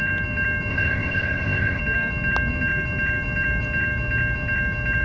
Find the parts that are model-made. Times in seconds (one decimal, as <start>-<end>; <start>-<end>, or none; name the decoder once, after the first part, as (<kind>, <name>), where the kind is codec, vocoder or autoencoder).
0.7-1.8 (codec, ZipCodec)